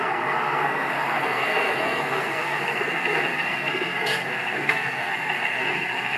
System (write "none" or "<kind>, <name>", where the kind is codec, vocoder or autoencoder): codec, SNAC